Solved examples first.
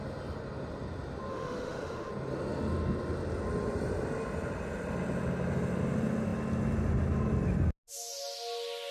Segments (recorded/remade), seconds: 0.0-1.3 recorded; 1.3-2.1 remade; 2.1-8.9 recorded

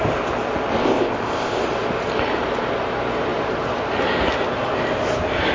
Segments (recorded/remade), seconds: 0.0-0.8 recorded; 0.8-1.6 remade; 1.6-5.5 recorded

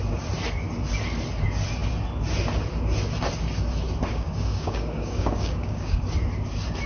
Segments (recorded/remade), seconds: 0.0-4.1 recorded; 4.1-6.0 remade; 6.0-6.9 recorded

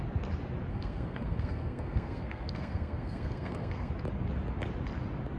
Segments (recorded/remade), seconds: 0.0-0.7 recorded; 0.7-3.9 remade; 3.9-5.4 recorded

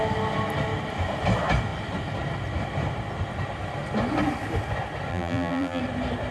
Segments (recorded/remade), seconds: 0.0-5.1 recorded; 5.1-5.8 remade; 5.8-6.3 recorded

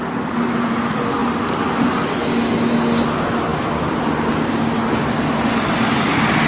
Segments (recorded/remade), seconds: 0.0-6.5 recorded

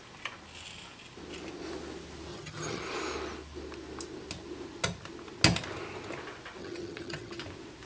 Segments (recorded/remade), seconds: 0.0-2.3 recorded; 2.3-2.8 remade; 2.8-6.6 recorded; 6.6-7.4 remade; 7.4-7.9 recorded